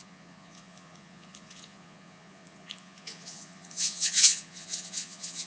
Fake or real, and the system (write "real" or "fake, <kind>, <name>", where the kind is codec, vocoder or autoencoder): fake, vocoder, Vocos